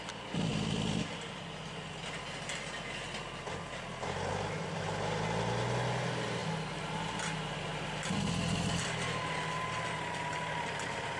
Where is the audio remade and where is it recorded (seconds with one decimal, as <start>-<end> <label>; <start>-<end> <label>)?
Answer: 0.0-11.2 recorded